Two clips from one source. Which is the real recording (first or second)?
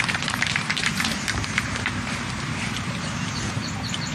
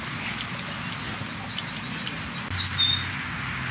second